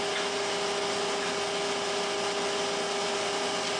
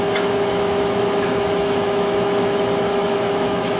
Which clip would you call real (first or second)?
first